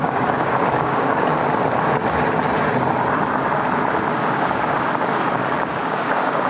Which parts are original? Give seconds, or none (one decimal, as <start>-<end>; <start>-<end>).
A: 1.3-4.1